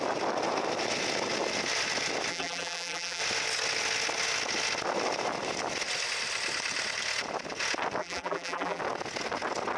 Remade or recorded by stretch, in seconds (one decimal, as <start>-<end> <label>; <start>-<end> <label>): 0.0-2.3 recorded; 2.3-3.2 remade; 3.2-8.0 recorded; 8.0-8.8 remade; 8.8-9.8 recorded